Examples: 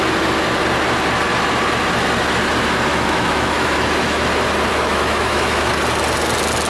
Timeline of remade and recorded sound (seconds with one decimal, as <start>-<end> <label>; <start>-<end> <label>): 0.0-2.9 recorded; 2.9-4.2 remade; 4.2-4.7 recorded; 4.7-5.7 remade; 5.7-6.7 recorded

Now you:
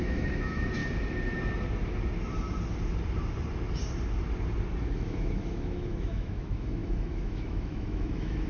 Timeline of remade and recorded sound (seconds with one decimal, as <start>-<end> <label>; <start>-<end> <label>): 0.0-0.8 remade; 0.8-5.0 recorded; 5.0-8.5 remade

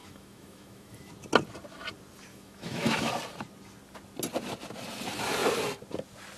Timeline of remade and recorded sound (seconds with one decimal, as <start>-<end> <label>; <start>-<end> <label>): 0.0-1.1 remade; 1.1-2.3 recorded; 2.3-3.1 remade; 3.1-6.4 recorded

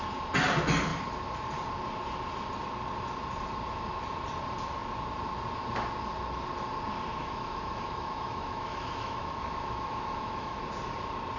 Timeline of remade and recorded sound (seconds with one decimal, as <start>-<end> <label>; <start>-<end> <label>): 0.0-7.2 recorded; 7.2-10.6 remade; 10.6-11.4 recorded

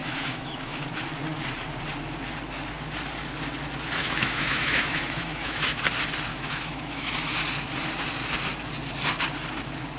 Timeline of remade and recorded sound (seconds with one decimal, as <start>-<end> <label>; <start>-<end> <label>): 0.0-0.8 remade; 0.8-4.0 recorded; 4.0-5.8 remade; 5.8-6.3 recorded; 6.3-7.1 remade; 7.1-10.0 recorded

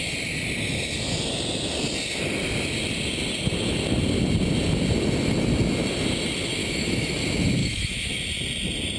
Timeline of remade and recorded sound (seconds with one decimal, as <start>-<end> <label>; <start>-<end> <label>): 0.0-6.6 recorded; 6.6-7.1 remade; 7.1-7.6 recorded; 7.6-8.1 remade; 8.1-9.0 recorded

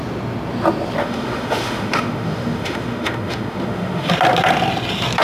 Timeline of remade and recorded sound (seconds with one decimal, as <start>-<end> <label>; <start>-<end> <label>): 0.0-1.0 recorded; 1.0-4.1 remade; 4.1-5.2 recorded